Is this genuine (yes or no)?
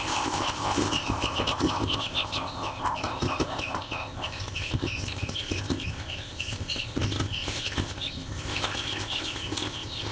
no